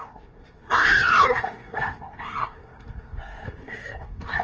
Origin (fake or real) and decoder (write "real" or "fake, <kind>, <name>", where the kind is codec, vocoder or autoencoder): fake, codec, SNAC